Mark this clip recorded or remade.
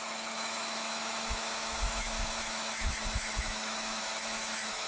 remade